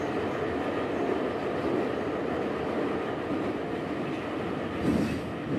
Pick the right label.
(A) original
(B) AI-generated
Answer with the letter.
A